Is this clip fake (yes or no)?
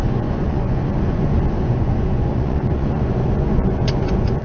yes